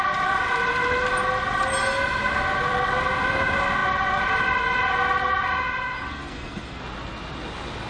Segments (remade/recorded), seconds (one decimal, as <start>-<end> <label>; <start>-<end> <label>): 0.0-6.1 recorded; 6.1-6.8 remade; 6.8-7.9 recorded